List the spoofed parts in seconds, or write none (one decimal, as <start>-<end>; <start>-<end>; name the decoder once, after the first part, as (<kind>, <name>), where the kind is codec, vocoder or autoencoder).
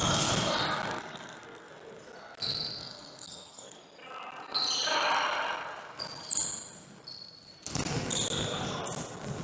0.9-1.7 (codec, SNAC); 2.8-3.8